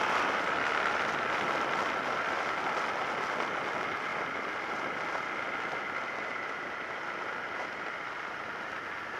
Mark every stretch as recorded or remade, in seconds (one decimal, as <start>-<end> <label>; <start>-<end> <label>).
0.0-9.2 recorded